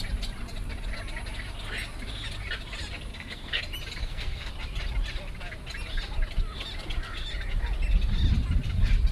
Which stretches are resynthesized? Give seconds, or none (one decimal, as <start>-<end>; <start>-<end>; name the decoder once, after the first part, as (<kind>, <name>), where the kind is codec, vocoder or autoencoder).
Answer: 3.1-3.6 (codec, SNAC); 4.0-4.5